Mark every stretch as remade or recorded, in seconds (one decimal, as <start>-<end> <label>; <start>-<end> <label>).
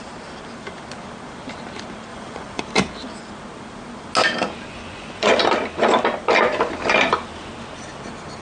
0.0-2.1 recorded; 2.1-2.6 remade; 2.6-4.7 recorded; 4.7-5.4 remade; 5.4-8.4 recorded